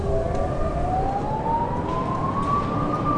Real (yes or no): yes